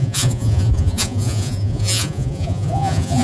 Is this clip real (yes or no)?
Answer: no